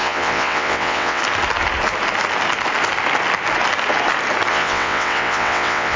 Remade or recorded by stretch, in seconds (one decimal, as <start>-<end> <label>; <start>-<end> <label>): 0.0-1.2 remade; 1.2-4.5 recorded; 4.5-6.0 remade